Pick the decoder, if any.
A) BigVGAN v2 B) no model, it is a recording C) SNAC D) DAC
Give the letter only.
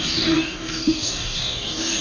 D